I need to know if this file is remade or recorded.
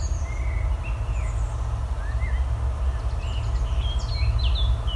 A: recorded